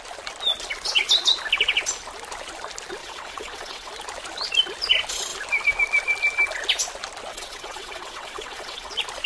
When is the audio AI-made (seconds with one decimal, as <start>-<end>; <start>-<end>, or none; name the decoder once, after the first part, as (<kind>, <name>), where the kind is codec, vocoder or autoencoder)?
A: 3.0-3.9 (vocoder, WaveNeXt); 7.3-8.9